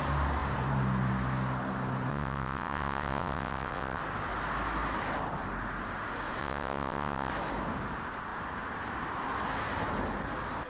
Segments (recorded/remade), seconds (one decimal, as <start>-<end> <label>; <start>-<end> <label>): 0.0-2.1 recorded; 2.1-4.0 remade; 4.0-6.4 recorded; 6.4-7.3 remade; 7.3-10.7 recorded